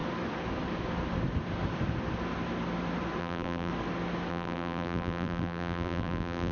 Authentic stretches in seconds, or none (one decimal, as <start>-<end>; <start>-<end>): 0.0-3.2; 3.7-4.3